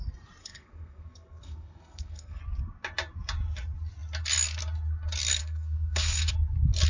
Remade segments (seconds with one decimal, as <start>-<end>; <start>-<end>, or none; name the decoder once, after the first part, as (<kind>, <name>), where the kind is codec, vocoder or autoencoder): 0.4-2.4 (codec, SNAC); 5.4-6.3

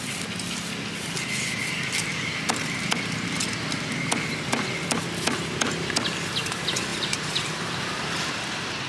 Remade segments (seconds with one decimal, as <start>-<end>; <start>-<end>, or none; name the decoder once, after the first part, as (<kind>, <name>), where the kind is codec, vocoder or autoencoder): 2.1-3.4 (vocoder, BigVGAN v2); 6.9-8.4

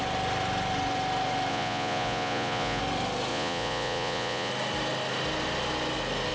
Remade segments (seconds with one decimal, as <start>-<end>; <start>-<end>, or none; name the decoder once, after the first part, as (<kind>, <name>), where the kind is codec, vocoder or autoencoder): 1.5-2.8 (vocoder, Vocos); 3.3-4.5

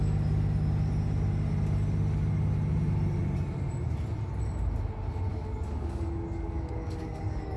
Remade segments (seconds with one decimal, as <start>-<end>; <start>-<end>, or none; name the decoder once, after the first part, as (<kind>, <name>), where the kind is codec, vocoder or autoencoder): 5.3-7.6 (codec, DAC)

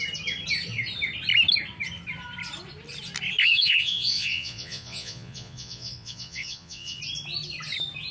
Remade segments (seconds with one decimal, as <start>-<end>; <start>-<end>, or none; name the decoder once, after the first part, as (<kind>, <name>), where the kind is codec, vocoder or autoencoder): 3.4-7.0 (vocoder, Vocos)

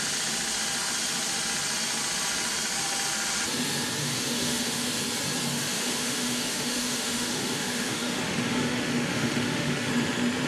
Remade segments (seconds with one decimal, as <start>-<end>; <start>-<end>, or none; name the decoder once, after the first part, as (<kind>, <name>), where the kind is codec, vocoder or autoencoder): 4.0-4.9 (autoencoder, DAC-VAE); 5.5-9.9

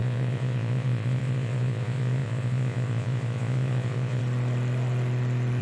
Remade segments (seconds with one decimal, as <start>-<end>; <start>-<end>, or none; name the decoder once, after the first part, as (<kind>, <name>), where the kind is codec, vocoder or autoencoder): 0.0-4.2 (vocoder, Vocos)

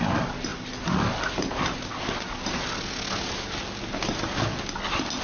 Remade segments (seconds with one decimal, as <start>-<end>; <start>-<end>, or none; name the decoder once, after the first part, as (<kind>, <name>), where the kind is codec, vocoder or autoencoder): none